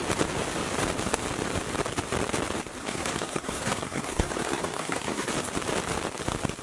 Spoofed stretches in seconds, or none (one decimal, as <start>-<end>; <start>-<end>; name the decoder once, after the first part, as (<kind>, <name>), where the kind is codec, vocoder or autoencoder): 2.8-5.3 (codec, SNAC)